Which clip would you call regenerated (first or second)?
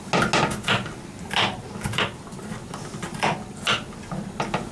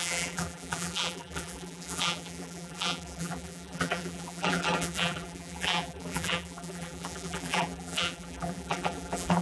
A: second